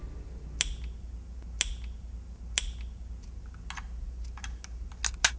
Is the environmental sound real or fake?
real